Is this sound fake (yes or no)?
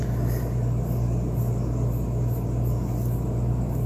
no